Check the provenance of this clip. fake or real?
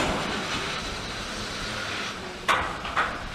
fake